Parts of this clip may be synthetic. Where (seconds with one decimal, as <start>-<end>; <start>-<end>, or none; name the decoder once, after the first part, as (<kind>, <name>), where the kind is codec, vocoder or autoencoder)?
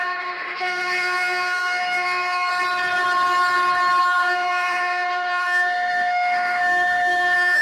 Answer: 0.0-2.5 (autoencoder, DAC-VAE); 4.0-7.6